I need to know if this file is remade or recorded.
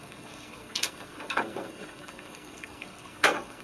remade